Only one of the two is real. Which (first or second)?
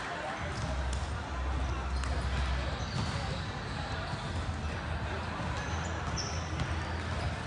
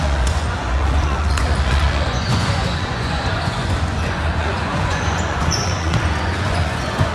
first